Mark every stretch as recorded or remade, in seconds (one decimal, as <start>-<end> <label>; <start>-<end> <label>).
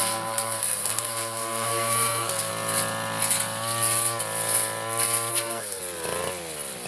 0.0-2.5 remade; 2.5-5.3 recorded; 5.3-5.8 remade; 5.8-6.9 recorded